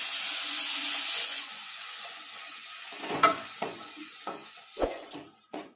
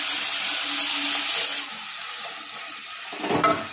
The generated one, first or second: first